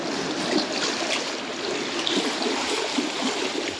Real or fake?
fake